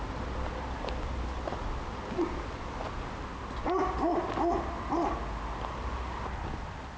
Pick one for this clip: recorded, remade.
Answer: recorded